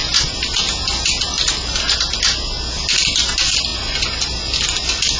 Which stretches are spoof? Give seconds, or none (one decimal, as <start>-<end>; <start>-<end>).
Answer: none

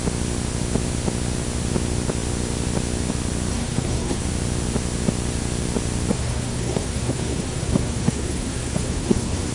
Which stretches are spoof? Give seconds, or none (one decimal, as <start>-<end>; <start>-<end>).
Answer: 3.5-4.2; 6.1-9.5

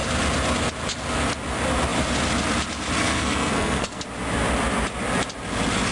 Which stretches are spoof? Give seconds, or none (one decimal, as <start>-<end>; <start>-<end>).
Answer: 3.0-4.0

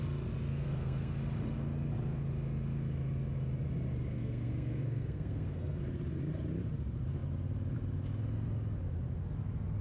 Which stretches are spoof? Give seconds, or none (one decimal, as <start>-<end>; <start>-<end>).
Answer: 0.5-1.2; 4.1-5.8

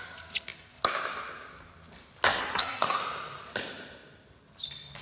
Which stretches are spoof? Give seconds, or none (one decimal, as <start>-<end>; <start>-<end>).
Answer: 2.4-3.0